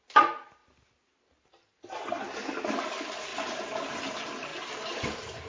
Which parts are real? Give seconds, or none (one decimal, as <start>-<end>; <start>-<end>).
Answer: 0.0-3.3; 4.1-4.5